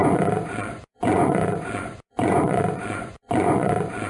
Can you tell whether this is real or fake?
fake